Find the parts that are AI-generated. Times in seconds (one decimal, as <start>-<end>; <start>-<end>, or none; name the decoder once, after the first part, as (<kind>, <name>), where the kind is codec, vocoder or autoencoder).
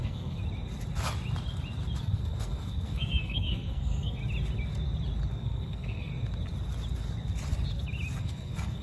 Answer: 0.0-0.4 (codec, SNAC); 2.0-4.2; 5.3-6.1; 8.2-8.8